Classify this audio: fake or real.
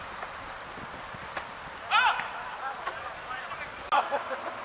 real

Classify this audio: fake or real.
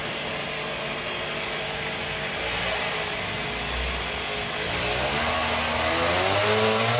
real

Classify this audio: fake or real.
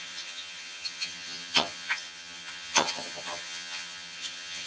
fake